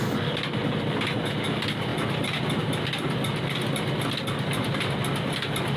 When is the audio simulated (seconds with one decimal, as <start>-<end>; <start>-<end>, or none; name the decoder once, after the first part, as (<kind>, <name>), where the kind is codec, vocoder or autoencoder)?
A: none